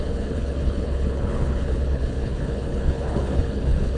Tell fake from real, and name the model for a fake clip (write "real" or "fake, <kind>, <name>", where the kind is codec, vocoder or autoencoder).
fake, codec, HILCodec